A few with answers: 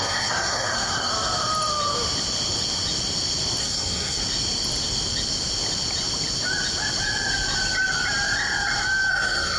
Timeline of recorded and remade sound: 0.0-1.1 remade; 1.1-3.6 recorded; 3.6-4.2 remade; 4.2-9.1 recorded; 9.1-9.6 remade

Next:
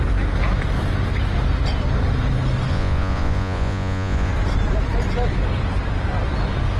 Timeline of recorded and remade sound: 0.0-2.7 recorded; 2.7-4.3 remade; 4.3-6.8 recorded

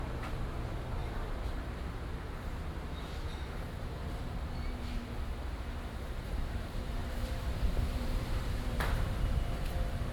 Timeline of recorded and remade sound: 0.0-10.1 remade

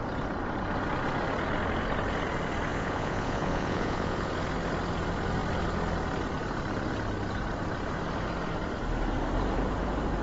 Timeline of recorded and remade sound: 0.0-2.7 recorded; 2.7-4.3 remade; 4.3-10.2 recorded